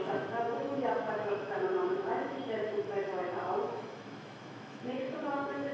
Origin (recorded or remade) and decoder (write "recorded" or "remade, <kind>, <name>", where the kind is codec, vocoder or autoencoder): remade, autoencoder, DAC-VAE